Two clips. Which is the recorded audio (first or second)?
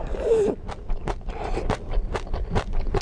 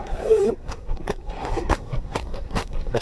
first